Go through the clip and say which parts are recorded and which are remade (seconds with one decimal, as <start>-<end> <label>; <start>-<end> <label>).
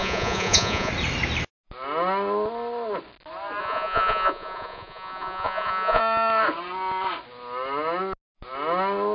0.0-0.9 remade; 0.9-3.6 recorded; 3.6-6.0 remade; 6.0-9.1 recorded